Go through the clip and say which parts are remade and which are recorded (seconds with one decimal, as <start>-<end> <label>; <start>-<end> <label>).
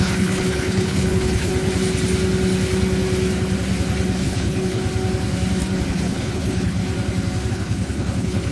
0.0-1.5 remade; 1.5-4.2 recorded; 4.2-4.8 remade; 4.8-5.9 recorded; 5.9-6.8 remade; 6.8-7.5 recorded; 7.5-8.5 remade